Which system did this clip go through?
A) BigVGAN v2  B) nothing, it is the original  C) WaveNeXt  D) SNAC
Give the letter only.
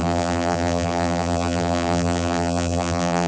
A